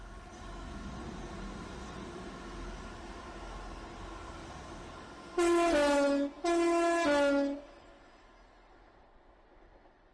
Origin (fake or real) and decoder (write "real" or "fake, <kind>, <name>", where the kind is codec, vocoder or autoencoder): real